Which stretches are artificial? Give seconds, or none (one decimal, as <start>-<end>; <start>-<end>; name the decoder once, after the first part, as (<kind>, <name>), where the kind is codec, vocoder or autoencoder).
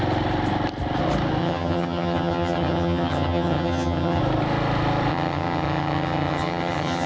1.4-4.2 (vocoder, HiFi-GAN); 5.1-7.1